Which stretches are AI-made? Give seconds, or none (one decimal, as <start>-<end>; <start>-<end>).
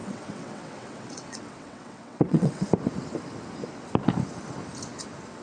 0.0-2.6